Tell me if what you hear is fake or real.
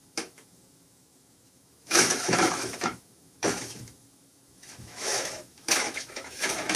fake